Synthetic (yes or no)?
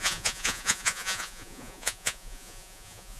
yes